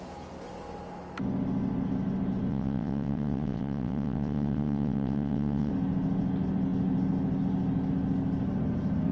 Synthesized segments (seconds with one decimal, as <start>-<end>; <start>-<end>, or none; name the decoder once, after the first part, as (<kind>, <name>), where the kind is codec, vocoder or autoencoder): 2.5-5.7 (vocoder, WaveNeXt)